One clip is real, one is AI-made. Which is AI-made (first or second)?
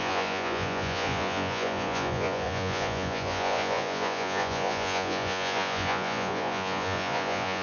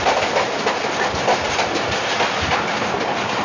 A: first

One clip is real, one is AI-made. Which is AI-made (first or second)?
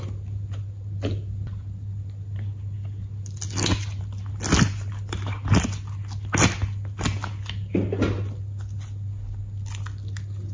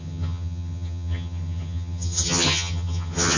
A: second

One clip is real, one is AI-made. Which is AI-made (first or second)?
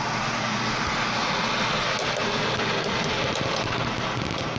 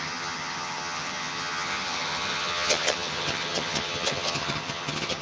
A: second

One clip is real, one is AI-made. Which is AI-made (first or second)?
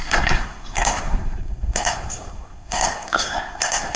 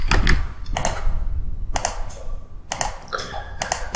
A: first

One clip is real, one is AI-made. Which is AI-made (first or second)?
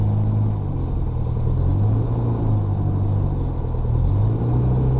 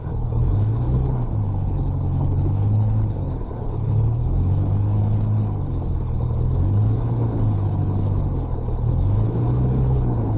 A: second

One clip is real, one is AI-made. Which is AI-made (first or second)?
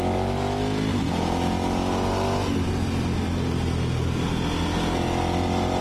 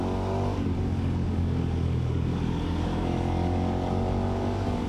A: second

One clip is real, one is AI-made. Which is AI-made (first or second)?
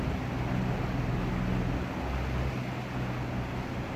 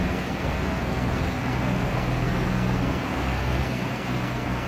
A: second